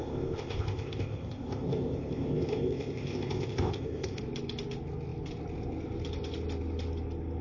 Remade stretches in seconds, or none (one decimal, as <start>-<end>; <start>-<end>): 0.0-4.2

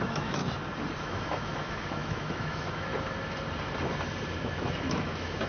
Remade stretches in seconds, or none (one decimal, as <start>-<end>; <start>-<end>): 0.0-0.4; 1.0-2.9; 4.4-5.5

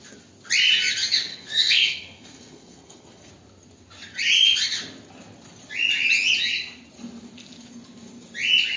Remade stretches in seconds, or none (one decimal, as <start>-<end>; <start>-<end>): 1.3-3.3

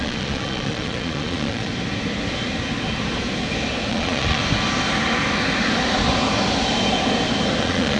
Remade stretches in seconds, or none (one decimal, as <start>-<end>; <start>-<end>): 0.0-1.7; 3.9-4.4; 7.6-8.0

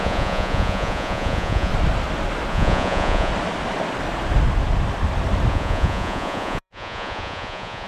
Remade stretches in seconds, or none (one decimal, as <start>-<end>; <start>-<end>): 0.0-1.7; 2.5-3.3; 5.5-7.9

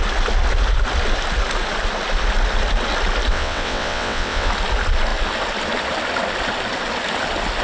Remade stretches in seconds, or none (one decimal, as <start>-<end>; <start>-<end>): 3.3-4.5

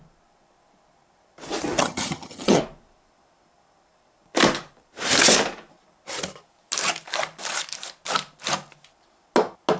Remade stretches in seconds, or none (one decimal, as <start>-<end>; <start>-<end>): 1.8-2.6

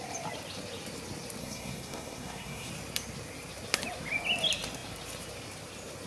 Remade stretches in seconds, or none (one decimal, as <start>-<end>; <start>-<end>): 1.4-2.7